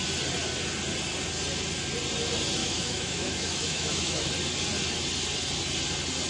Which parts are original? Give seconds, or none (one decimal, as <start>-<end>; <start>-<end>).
0.0-2.6; 4.3-6.3